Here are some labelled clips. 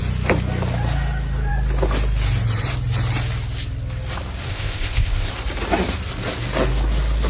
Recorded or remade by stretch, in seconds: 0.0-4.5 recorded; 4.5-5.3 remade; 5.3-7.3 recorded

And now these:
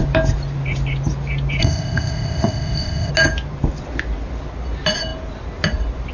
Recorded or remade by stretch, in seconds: 0.0-1.6 recorded; 1.6-3.1 remade; 3.1-6.1 recorded